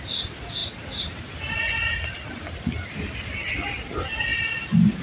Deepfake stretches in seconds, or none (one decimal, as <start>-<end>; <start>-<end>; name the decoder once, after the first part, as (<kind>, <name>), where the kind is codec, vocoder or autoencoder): none